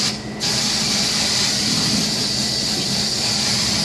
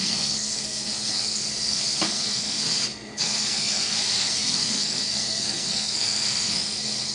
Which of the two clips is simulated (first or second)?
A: second